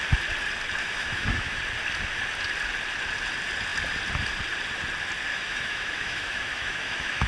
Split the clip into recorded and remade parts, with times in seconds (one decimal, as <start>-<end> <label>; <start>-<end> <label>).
0.0-0.8 recorded; 0.8-1.6 remade; 1.6-5.3 recorded; 5.3-7.3 remade